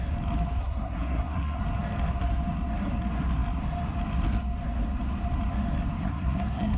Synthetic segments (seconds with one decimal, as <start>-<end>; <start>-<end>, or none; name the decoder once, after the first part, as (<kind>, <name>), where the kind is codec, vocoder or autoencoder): 0.6-1.6 (codec, SNAC); 6.0-6.8